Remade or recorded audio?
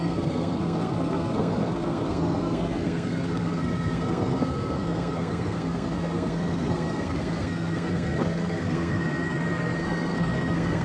remade